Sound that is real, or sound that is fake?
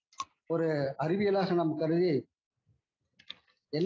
real